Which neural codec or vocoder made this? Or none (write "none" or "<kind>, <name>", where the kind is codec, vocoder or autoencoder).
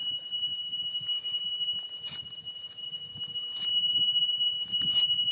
vocoder, BigVGAN v2